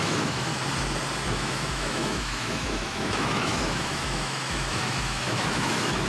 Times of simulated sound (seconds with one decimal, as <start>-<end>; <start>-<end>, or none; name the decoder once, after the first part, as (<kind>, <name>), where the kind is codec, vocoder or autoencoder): 0.0-0.5 (autoencoder, DAC-VAE); 1.3-6.1